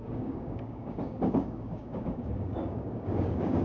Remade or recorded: remade